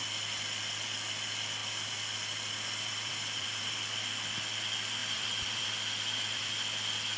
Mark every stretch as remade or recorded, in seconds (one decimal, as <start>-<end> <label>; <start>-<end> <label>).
0.0-1.6 recorded; 1.6-2.5 remade; 2.5-2.9 recorded; 2.9-3.6 remade; 3.6-5.0 recorded; 5.0-6.5 remade; 6.5-7.2 recorded